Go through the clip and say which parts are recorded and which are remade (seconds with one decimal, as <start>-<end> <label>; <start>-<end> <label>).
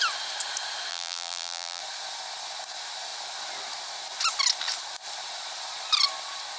0.0-0.9 recorded; 0.9-1.8 remade; 1.8-6.6 recorded